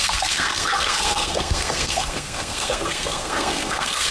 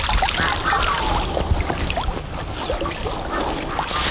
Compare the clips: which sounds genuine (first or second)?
second